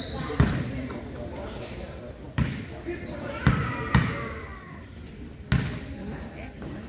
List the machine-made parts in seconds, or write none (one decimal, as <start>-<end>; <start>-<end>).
0.0-4.1; 4.5-5.3